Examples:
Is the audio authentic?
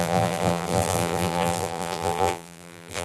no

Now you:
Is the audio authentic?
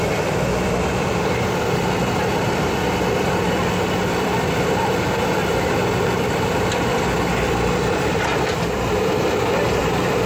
no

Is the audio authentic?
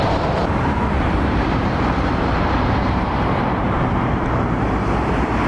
no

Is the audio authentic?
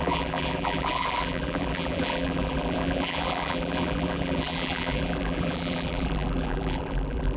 no